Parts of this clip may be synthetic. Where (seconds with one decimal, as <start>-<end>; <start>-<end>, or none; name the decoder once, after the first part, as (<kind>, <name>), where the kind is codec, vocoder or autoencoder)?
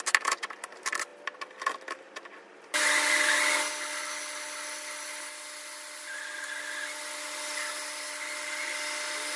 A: none